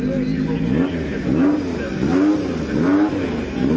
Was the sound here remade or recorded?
recorded